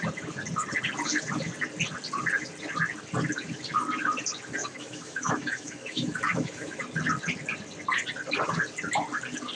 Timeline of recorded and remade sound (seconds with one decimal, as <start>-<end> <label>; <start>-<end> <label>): 0.0-4.6 recorded; 4.6-6.8 remade; 6.8-9.5 recorded